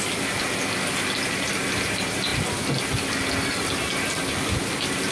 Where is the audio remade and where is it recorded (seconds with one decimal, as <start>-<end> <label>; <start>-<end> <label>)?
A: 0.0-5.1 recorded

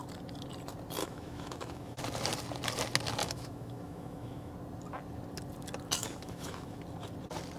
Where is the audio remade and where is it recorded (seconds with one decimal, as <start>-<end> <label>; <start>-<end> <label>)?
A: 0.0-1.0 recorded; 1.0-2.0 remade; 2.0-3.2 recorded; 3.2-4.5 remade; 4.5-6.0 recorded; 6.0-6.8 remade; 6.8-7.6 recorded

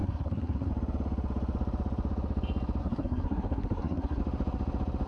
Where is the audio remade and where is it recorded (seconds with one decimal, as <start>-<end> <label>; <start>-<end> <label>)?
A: 0.0-0.7 remade; 0.7-2.8 recorded; 2.8-4.2 remade; 4.2-5.1 recorded